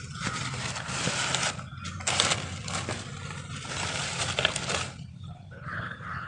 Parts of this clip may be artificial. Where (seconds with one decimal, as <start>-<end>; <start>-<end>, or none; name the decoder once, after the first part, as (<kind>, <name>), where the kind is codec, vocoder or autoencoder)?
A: 5.1-6.3 (codec, HILCodec)